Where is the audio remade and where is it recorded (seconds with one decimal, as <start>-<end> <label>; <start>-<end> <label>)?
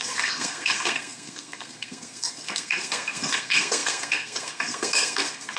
0.0-5.6 remade